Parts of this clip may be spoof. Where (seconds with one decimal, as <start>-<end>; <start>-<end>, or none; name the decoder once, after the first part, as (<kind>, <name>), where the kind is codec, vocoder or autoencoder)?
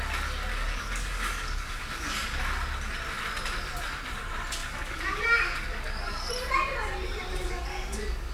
0.5-2.4 (codec, DAC); 4.6-6.3; 7.2-8.3